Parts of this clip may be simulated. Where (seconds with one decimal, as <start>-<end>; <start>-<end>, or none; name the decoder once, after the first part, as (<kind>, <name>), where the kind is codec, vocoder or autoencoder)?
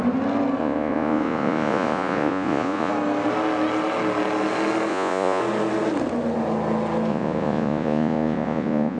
0.6-2.9 (vocoder, Vocos); 4.9-5.4; 7.1-9.0